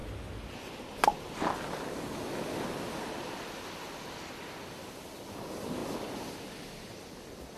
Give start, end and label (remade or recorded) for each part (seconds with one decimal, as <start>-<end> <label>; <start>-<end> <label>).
0.0-7.6 recorded